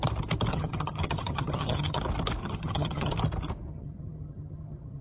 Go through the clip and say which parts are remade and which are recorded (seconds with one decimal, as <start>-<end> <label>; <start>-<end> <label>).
0.0-0.5 recorded; 0.5-2.0 remade; 2.0-2.4 recorded; 2.4-3.1 remade; 3.1-3.7 recorded; 3.7-5.0 remade